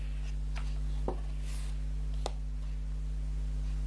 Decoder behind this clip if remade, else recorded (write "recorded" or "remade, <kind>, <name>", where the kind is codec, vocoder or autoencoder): recorded